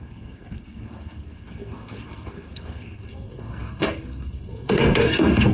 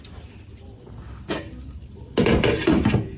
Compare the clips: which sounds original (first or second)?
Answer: second